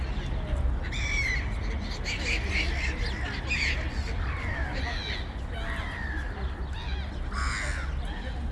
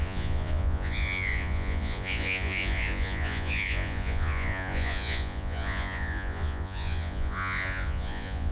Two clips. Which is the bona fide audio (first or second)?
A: first